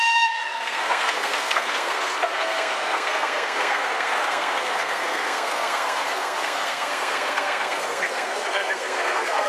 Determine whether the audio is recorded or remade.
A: remade